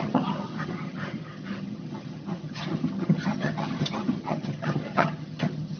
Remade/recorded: remade